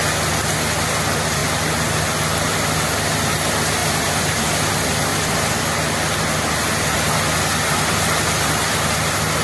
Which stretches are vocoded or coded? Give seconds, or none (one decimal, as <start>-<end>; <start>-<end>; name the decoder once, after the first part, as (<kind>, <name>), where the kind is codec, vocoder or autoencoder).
3.8-4.4 (vocoder, BigVGAN v2); 5.1-5.6